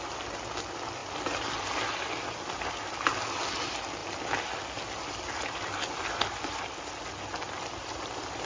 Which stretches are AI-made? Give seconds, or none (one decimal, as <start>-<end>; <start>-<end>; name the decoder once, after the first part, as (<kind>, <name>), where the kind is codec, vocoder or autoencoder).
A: none